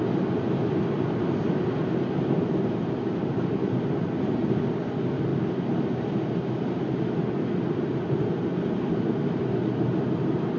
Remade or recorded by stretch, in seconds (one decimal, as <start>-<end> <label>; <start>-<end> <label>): 0.0-10.6 recorded